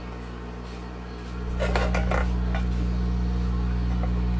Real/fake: real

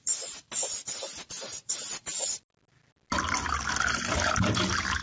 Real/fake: real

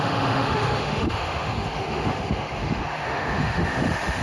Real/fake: fake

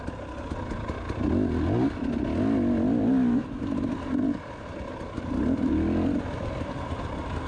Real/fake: real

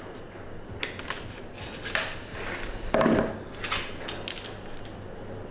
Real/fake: real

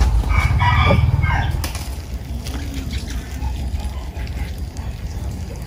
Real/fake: real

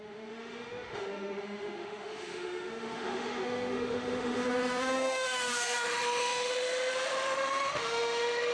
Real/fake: fake